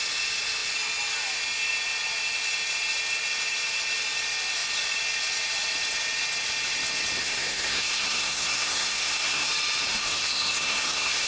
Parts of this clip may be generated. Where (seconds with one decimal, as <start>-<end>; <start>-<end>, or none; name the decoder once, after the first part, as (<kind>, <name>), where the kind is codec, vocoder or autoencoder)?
7.2-9.5 (codec, SNAC); 9.9-11.3